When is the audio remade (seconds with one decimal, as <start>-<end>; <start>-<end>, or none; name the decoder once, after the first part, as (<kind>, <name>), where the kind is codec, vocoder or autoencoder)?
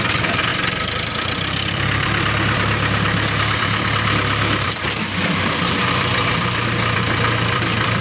0.0-0.5 (vocoder, BigVGAN v2); 1.1-8.0